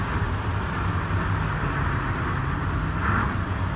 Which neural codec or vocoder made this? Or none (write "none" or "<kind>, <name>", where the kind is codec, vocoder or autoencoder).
none